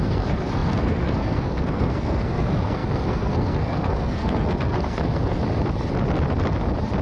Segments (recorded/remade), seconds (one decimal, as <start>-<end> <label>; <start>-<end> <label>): 0.0-5.4 remade; 5.4-7.0 recorded